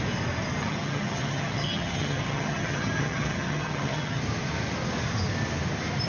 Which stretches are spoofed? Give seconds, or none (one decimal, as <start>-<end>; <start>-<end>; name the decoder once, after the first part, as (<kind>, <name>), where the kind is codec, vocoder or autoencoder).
0.6-4.2 (vocoder, HiFi-GAN)